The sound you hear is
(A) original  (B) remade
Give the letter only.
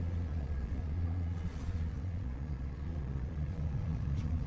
B